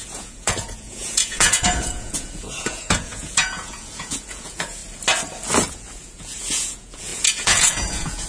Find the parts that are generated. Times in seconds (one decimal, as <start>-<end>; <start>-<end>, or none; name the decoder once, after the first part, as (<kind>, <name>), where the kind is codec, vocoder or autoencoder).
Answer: 0.0-4.8 (vocoder, Vocos); 5.7-8.3